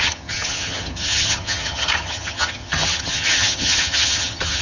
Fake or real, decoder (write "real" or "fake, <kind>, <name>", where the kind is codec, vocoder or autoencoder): fake, vocoder, HiFi-GAN